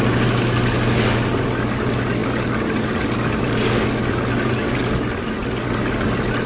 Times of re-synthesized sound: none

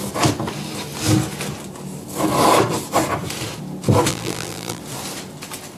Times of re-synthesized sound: 4.1-4.8 (vocoder, BigVGAN v2)